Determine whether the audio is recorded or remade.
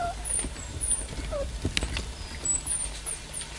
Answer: recorded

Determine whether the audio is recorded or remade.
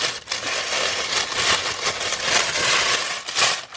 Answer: recorded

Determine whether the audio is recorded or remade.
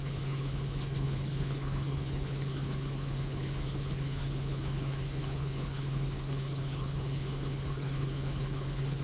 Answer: remade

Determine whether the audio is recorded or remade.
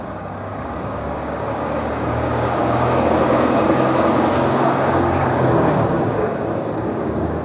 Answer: remade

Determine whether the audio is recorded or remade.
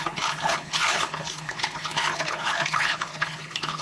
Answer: remade